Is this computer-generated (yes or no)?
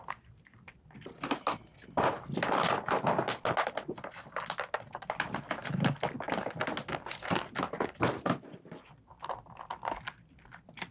no